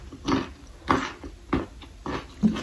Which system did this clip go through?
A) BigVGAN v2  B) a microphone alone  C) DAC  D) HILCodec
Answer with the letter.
B